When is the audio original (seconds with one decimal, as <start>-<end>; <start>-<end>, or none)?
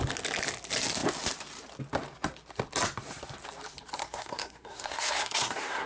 0.0-4.0